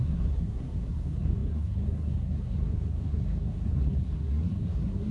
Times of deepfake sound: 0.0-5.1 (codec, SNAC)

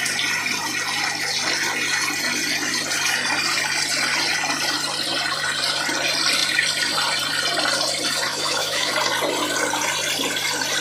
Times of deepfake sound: 8.3-8.9 (autoencoder, DAC-VAE)

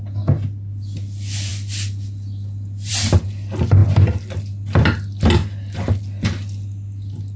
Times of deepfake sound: none